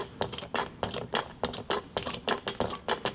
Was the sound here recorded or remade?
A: recorded